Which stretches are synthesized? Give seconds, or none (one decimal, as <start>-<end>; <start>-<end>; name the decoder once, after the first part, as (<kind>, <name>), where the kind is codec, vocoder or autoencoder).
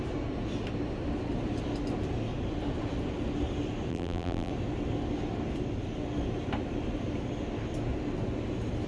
3.9-4.5 (vocoder, BigVGAN v2)